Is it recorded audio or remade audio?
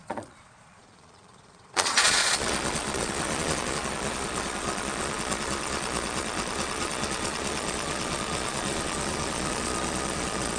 remade